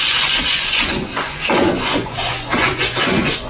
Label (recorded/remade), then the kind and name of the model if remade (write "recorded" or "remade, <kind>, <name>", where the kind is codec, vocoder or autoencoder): remade, vocoder, Vocos